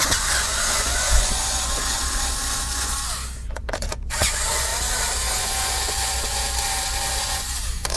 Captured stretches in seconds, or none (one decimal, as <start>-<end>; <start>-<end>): 4.7-5.3; 6.5-7.2